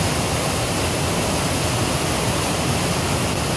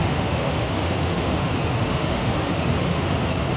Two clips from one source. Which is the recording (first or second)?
first